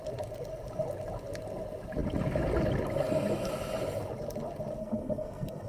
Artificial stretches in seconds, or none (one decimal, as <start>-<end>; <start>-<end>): 4.8-5.7